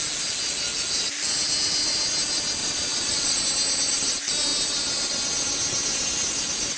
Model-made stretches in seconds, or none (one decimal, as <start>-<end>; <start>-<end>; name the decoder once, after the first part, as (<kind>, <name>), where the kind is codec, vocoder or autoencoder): 2.6-3.4 (vocoder, Vocos)